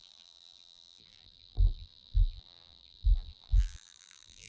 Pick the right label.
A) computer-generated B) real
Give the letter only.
A